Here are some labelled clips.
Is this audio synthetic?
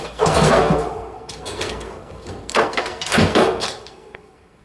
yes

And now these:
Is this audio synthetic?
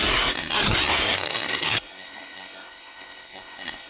yes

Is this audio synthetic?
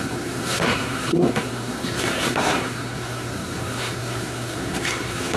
yes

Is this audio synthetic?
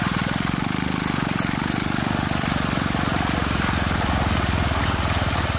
no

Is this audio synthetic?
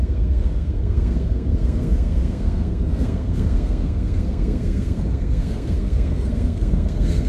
yes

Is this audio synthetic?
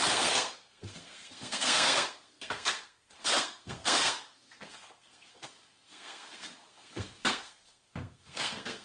yes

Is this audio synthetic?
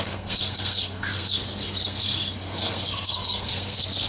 yes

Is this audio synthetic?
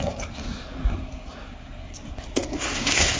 yes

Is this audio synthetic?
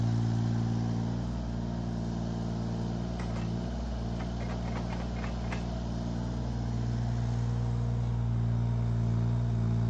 no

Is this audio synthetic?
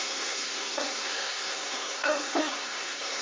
yes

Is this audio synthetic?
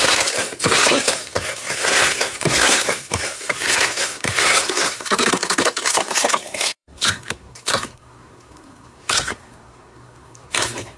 yes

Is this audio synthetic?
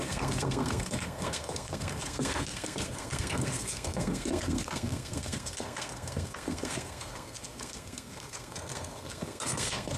yes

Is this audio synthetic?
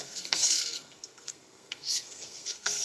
yes